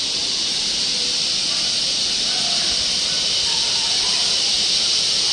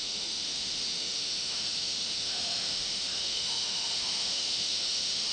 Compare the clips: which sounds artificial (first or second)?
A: second